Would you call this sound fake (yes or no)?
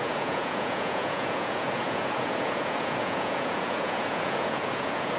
yes